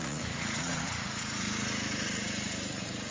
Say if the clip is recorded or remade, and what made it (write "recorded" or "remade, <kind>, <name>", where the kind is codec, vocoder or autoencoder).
remade, vocoder, Vocos